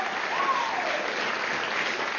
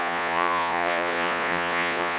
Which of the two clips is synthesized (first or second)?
second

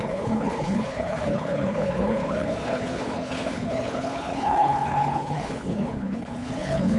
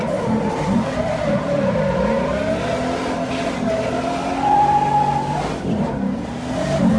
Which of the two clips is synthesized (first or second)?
first